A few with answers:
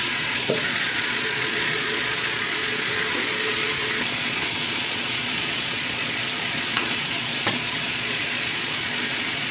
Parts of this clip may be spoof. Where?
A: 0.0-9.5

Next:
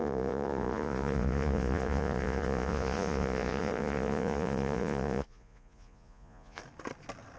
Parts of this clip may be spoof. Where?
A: 0.0-6.6

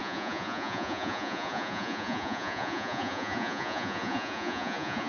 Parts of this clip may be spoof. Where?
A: 0.0-5.1

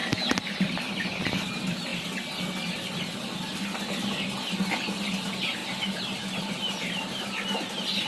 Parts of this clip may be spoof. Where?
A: none